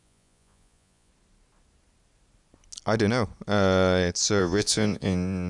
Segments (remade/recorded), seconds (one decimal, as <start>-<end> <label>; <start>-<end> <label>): 0.0-1.1 remade; 1.1-4.4 recorded; 4.4-5.5 remade